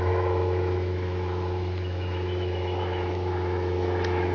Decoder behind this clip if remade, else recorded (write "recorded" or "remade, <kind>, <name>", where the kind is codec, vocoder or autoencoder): remade, autoencoder, DAC-VAE